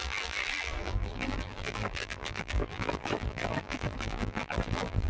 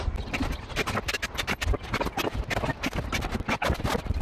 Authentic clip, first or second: second